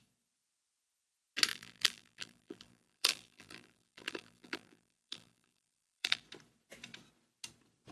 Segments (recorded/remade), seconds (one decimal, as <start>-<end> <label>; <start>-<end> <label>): 0.0-1.5 recorded; 1.5-6.2 remade; 6.2-7.9 recorded